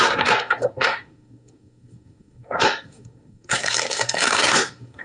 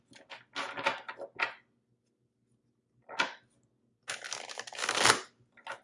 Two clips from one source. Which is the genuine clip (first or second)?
second